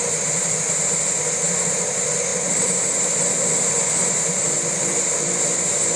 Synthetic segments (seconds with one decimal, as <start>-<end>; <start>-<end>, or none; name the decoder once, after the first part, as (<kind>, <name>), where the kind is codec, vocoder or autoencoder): none